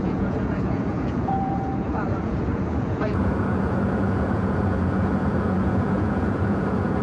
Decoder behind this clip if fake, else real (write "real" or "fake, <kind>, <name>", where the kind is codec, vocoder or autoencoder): fake, vocoder, Vocos